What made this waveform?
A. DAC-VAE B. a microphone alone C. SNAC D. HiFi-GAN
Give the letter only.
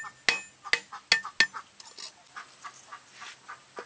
B